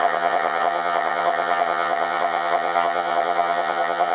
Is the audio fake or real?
fake